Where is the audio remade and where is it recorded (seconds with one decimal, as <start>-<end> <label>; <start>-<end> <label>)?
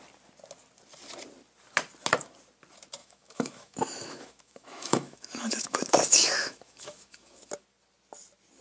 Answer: 0.0-3.0 recorded; 3.0-7.5 remade; 7.5-8.6 recorded